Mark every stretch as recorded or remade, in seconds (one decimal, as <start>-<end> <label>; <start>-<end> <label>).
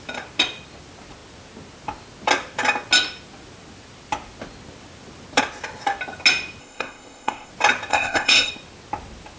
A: 0.0-6.6 recorded; 6.6-7.5 remade; 7.5-7.9 recorded; 7.9-8.5 remade; 8.5-9.4 recorded